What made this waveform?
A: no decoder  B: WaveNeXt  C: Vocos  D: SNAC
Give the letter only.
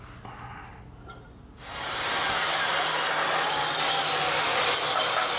A